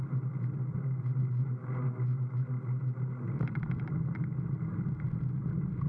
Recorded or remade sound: recorded